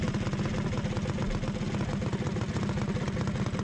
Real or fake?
real